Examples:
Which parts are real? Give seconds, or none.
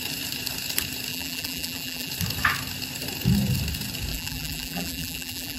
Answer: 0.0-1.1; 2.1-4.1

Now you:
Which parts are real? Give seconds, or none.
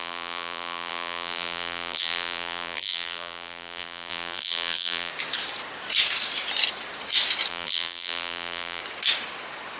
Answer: 5.1-7.5; 8.8-9.8